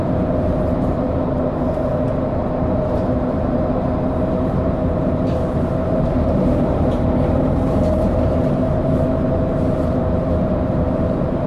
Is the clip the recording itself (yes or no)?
no